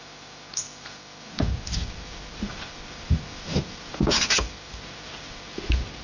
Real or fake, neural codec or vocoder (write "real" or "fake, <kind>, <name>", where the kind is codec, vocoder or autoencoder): fake, vocoder, BigVGAN v2